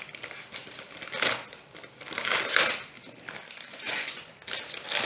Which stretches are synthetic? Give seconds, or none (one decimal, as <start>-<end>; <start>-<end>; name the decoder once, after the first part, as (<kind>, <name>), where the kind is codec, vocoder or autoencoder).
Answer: 3.7-4.3 (vocoder, Vocos)